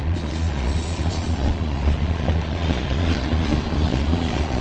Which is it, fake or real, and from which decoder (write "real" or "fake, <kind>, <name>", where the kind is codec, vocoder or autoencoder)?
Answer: fake, vocoder, Vocos